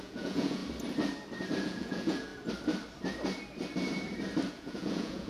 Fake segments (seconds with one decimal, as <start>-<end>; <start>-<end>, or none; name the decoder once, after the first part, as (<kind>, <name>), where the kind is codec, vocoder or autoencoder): 0.0-0.6 (vocoder, Vocos); 1.6-2.3; 4.5-5.3